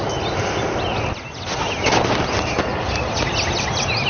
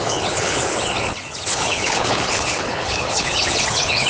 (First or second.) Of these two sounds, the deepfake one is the second